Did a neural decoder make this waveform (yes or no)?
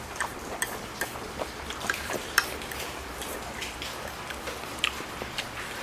yes